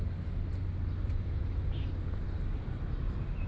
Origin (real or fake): real